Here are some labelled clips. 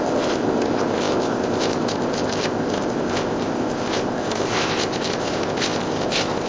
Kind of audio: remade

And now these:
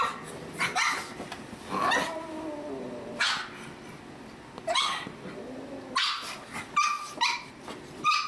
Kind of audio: recorded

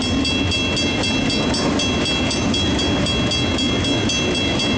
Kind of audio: recorded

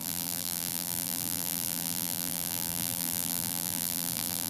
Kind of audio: remade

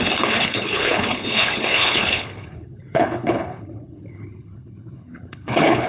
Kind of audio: remade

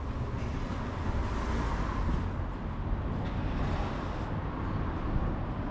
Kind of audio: recorded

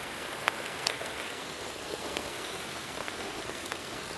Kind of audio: remade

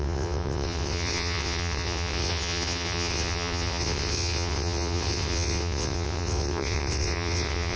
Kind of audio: remade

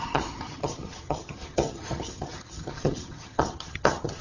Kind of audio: remade